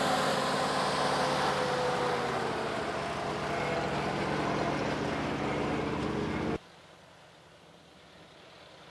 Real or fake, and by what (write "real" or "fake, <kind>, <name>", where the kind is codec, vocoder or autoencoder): real